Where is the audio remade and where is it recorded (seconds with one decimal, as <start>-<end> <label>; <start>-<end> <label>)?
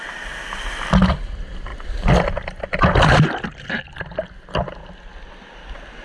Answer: 0.0-6.0 recorded